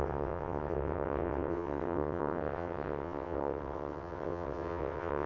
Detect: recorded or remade remade